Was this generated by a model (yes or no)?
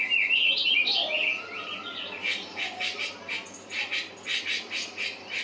no